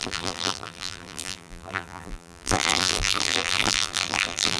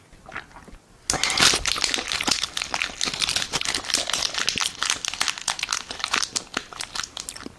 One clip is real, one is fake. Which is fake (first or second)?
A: first